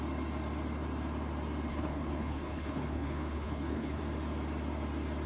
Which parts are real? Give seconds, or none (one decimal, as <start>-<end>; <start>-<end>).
0.0-1.7; 4.0-5.3